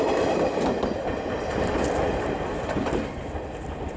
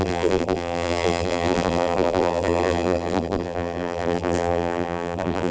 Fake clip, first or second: second